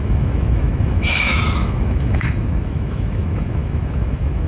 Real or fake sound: fake